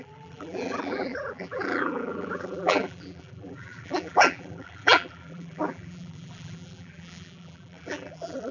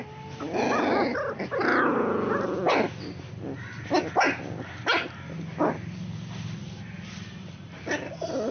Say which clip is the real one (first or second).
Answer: second